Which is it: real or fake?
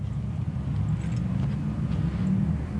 real